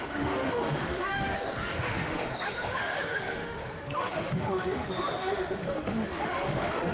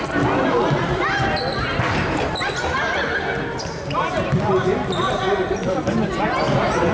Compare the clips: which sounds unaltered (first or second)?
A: second